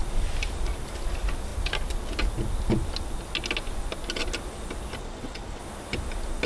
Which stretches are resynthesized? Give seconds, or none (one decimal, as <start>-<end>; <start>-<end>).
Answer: 5.0-5.6